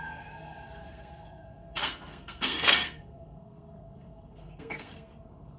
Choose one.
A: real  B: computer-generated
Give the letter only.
B